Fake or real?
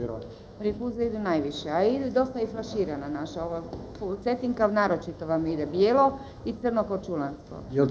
fake